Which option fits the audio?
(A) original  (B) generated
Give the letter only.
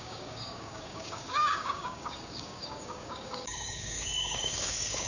B